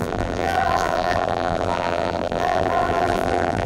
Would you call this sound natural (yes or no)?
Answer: no